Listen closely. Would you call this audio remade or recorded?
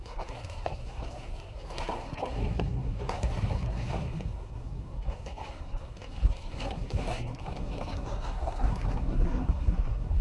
remade